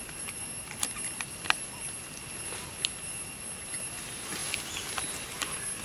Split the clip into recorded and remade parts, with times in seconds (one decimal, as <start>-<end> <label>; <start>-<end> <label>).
0.0-5.8 recorded